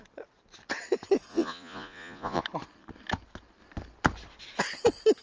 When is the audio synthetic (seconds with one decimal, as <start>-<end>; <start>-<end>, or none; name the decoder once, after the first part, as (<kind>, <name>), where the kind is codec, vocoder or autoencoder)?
1.3-2.4 (vocoder, Vocos)